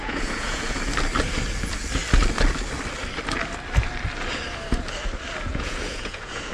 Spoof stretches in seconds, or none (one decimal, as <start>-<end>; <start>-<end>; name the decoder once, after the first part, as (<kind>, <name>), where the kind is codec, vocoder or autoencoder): 0.0-0.8 (vocoder, Vocos); 5.5-6.5